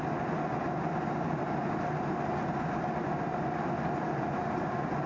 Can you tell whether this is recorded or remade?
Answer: recorded